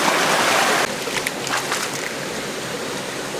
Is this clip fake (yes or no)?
no